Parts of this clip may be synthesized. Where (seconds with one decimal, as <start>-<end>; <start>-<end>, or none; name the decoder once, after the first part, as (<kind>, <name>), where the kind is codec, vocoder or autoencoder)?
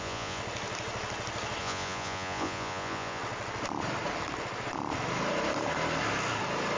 0.0-0.4 (vocoder, Vocos); 1.6-3.2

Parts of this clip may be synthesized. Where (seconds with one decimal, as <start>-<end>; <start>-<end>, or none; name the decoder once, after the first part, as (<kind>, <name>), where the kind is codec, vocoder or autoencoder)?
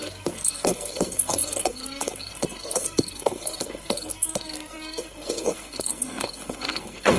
0.0-7.2 (codec, SNAC)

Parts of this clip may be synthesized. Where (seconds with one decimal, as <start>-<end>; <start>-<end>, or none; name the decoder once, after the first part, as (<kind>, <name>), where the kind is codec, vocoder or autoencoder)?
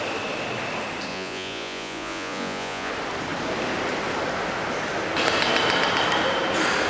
1.1-2.9 (vocoder, Vocos)